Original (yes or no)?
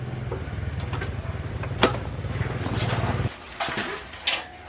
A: yes